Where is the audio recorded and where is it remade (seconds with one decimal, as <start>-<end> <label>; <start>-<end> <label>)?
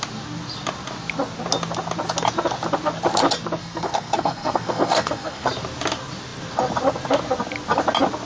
0.0-3.6 recorded; 3.6-5.5 remade; 5.5-8.3 recorded